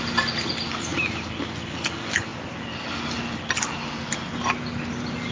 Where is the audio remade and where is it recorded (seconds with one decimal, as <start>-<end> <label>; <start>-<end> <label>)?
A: 0.0-5.3 recorded

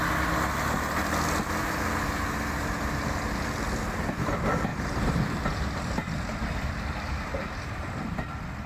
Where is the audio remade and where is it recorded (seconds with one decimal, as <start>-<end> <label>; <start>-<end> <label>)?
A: 0.0-4.7 recorded; 4.7-8.0 remade; 8.0-8.7 recorded